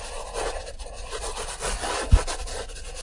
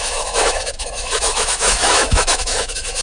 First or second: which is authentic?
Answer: first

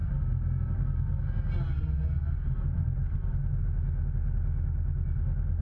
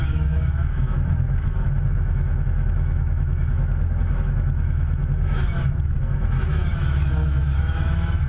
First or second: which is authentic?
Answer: first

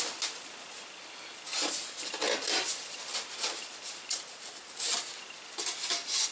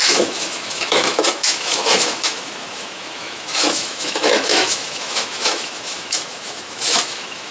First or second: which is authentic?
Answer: first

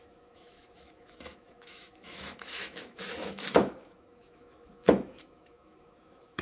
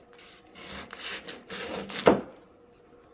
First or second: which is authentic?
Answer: second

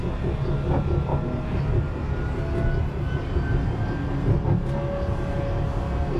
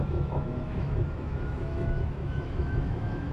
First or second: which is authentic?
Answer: first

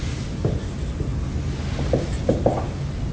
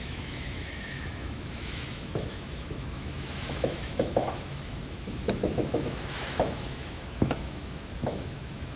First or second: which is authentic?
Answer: first